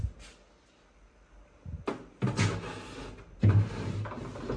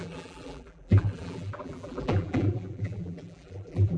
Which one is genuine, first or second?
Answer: first